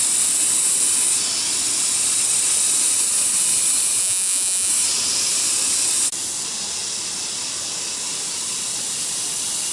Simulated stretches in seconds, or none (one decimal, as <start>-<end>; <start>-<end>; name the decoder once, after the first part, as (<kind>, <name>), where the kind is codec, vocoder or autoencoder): 4.0-4.7 (vocoder, Vocos)